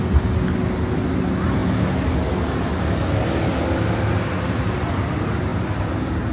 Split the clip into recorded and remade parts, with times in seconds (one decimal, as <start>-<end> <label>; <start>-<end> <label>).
0.0-6.3 recorded